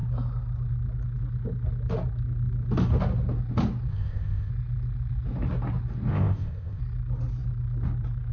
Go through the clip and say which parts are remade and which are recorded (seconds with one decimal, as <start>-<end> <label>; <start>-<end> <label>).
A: 0.0-3.9 recorded; 3.9-4.5 remade; 4.5-6.1 recorded; 6.1-6.8 remade; 6.8-8.3 recorded